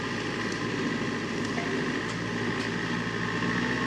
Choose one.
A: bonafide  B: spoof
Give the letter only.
A